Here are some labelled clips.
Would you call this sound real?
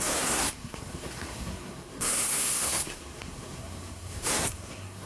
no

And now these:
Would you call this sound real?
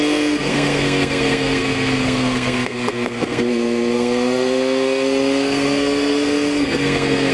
no